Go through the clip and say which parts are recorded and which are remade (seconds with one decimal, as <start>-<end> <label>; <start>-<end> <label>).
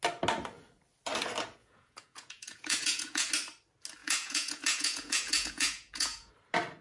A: 0.0-1.6 recorded; 1.6-3.3 remade; 3.3-4.0 recorded; 4.0-6.3 remade; 6.3-6.8 recorded